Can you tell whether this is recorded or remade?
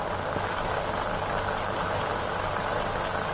recorded